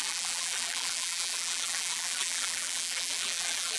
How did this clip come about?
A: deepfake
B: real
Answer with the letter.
A